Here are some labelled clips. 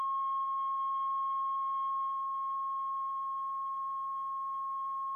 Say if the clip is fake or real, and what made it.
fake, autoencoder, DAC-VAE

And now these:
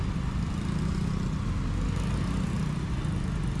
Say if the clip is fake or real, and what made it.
real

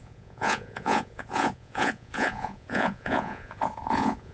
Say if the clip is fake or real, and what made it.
fake, vocoder, Vocos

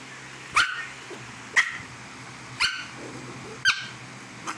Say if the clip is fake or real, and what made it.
real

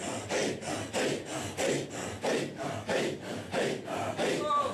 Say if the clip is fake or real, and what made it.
real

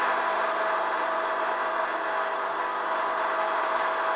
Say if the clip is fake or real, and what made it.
real